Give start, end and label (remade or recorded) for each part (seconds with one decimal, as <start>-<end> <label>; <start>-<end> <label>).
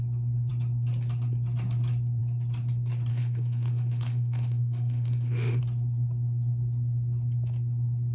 0.0-3.1 recorded; 3.1-5.6 remade; 5.6-8.1 recorded